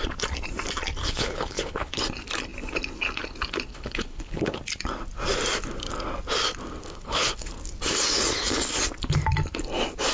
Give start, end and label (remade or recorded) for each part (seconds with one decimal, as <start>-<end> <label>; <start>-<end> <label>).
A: 0.0-1.0 recorded; 1.0-1.9 remade; 1.9-3.7 recorded; 3.7-4.6 remade; 4.6-6.8 recorded; 6.8-7.5 remade; 7.5-10.1 recorded